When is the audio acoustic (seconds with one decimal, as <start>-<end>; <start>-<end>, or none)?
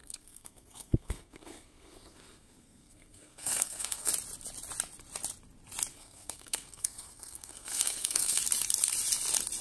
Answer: 4.1-5.9; 8.4-9.6